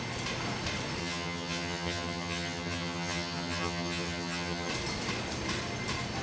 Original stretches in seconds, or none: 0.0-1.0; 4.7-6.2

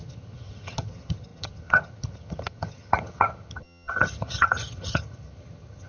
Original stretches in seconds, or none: none